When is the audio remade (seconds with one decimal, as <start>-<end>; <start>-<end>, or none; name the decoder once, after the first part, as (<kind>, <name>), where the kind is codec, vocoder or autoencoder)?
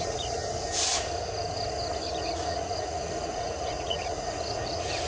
0.0-0.4 (vocoder, Vocos); 2.2-5.1